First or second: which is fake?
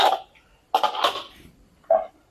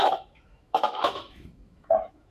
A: second